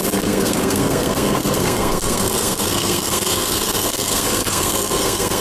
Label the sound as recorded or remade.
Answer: remade